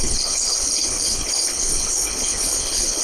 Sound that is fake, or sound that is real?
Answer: fake